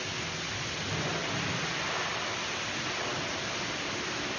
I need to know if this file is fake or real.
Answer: real